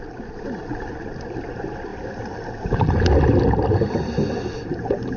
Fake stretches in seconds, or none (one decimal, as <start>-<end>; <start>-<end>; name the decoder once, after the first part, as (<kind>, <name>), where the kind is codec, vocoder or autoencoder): none